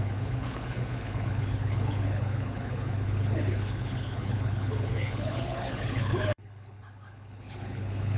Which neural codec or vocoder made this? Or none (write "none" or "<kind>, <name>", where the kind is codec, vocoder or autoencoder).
codec, HILCodec